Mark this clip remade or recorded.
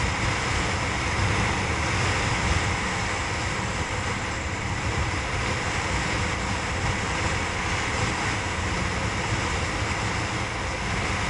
recorded